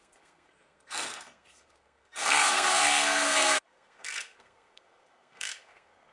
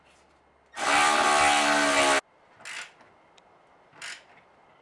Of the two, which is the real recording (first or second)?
second